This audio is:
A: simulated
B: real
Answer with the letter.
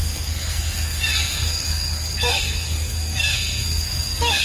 A